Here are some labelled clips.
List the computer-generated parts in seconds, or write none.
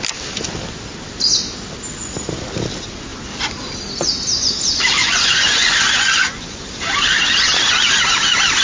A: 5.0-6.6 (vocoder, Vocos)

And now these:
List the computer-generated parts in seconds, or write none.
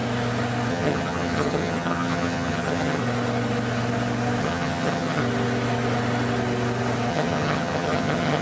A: 0.7-3.0 (vocoder, HiFi-GAN); 4.4-5.2; 7.1-8.4